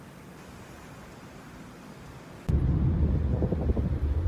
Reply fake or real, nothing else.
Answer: real